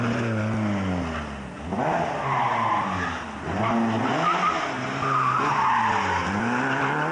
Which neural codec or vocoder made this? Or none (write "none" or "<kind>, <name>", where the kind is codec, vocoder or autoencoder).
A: none